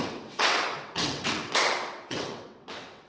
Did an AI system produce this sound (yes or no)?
yes